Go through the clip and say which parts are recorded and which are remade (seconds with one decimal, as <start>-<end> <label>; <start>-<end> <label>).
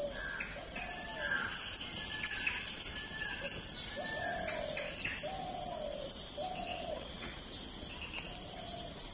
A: 0.0-6.7 recorded; 6.7-7.4 remade; 7.4-9.1 recorded